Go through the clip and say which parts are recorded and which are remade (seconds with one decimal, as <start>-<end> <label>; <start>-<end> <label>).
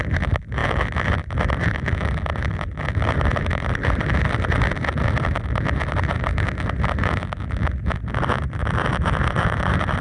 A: 0.0-0.6 remade; 0.6-1.4 recorded; 1.4-8.6 remade; 8.6-9.3 recorded; 9.3-10.0 remade